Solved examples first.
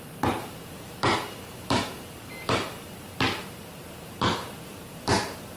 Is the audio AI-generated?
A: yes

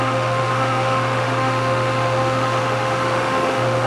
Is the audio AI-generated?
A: yes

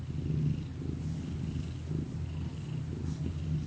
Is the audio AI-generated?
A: no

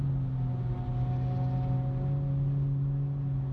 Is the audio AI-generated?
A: no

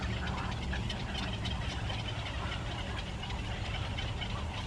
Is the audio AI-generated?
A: yes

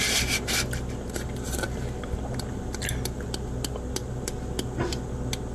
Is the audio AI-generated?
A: no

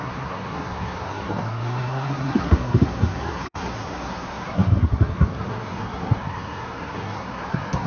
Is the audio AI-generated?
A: yes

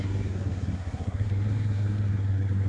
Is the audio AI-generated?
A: yes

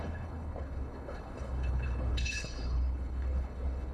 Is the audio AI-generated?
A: yes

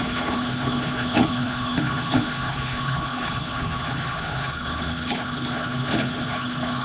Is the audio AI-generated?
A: yes